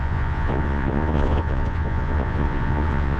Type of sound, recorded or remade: remade